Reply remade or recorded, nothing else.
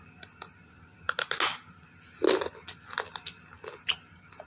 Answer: recorded